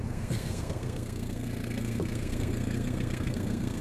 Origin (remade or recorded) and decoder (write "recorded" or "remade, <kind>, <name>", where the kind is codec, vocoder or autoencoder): remade, codec, SNAC